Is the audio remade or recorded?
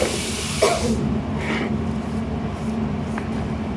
recorded